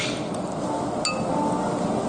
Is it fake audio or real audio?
real